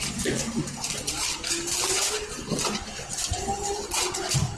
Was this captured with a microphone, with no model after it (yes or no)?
yes